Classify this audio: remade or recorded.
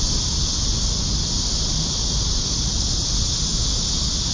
recorded